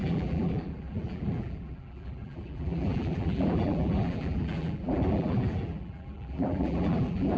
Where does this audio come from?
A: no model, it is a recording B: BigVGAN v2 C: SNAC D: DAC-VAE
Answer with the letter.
B